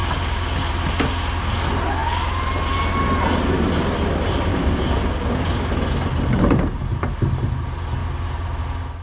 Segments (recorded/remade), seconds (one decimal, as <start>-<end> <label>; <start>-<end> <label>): 0.0-0.6 remade; 0.6-4.5 recorded; 4.5-5.7 remade; 5.7-9.0 recorded